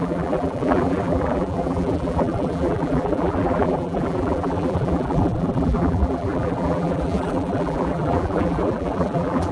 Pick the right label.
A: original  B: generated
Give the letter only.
B